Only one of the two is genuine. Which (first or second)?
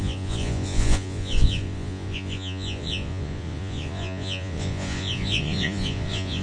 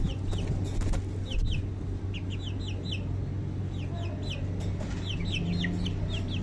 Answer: second